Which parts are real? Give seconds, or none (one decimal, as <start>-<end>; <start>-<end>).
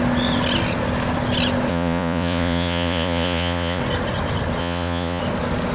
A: 0.0-1.7; 3.8-4.6; 5.2-5.7